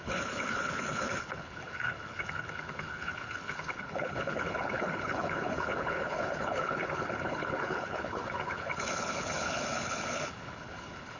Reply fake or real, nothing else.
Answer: fake